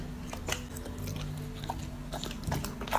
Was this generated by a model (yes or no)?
no